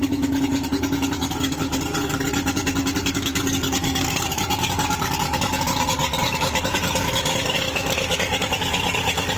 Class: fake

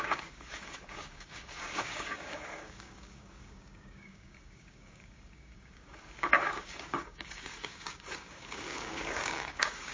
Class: fake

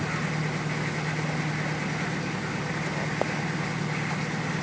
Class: real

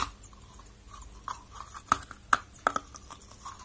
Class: real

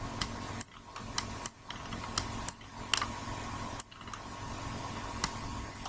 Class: real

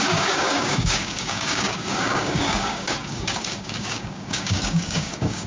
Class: fake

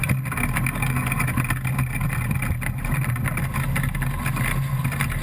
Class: real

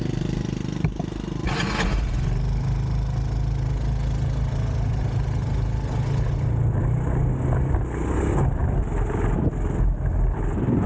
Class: real